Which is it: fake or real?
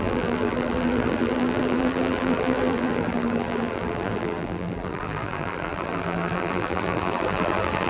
fake